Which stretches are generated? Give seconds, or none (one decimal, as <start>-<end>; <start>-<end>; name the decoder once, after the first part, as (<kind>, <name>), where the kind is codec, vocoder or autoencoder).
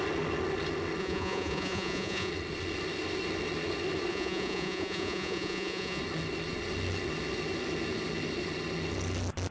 1.0-2.3 (vocoder, Vocos); 4.1-6.0